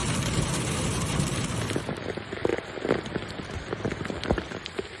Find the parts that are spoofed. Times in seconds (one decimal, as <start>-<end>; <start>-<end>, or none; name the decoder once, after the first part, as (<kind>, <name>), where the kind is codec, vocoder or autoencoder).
0.0-1.9 (vocoder, BigVGAN v2); 2.5-5.0